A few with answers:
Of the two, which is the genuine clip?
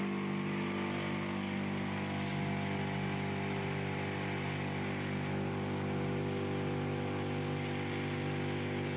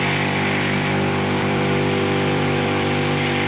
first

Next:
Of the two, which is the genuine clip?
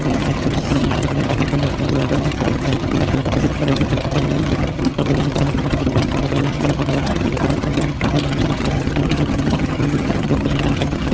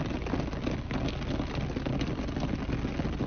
second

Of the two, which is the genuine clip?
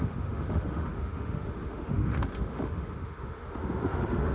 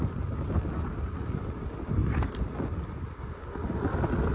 second